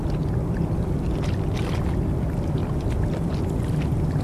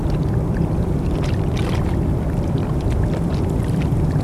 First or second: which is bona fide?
first